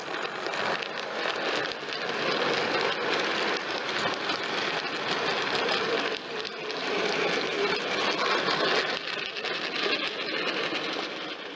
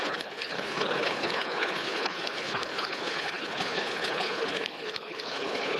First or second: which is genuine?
first